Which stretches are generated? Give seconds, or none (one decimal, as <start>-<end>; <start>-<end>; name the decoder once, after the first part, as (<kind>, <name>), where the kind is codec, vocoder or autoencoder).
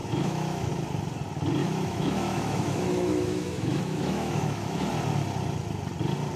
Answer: 0.0-0.7 (autoencoder, DAC-VAE); 1.6-4.9